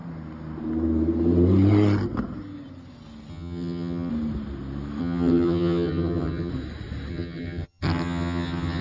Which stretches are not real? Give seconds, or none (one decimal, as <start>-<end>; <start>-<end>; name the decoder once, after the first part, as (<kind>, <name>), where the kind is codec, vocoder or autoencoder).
3.3-4.1 (vocoder, HiFi-GAN); 5.0-6.5; 7.1-8.8